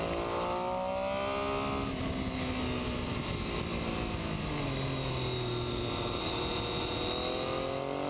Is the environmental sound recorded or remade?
recorded